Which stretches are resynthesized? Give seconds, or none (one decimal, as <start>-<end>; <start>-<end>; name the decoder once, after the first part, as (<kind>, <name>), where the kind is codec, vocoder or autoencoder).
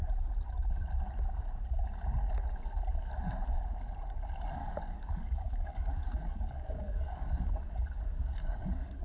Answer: 4.6-9.0 (codec, DAC)